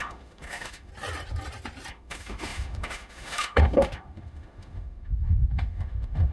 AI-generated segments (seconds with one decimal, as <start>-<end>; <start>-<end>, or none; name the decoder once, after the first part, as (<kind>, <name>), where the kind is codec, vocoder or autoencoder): 0.0-0.9 (autoencoder, DAC-VAE); 1.9-6.3

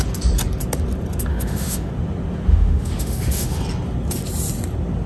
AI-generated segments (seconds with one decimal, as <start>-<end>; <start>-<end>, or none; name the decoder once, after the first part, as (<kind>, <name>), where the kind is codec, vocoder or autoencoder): 1.3-1.9 (autoencoder, DAC-VAE); 2.5-3.6

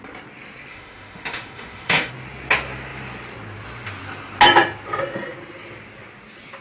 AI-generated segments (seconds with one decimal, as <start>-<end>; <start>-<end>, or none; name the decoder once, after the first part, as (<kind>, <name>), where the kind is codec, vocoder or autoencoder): 0.7-2.1 (autoencoder, DAC-VAE)

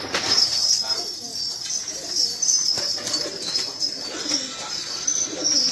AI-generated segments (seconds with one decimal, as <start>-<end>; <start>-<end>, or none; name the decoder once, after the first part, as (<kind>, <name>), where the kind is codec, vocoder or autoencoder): none

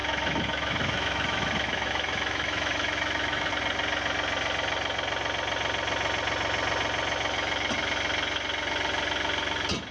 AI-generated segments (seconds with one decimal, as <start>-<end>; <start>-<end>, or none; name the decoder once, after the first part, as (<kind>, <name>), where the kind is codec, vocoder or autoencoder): 0.0-3.5 (autoencoder, DAC-VAE)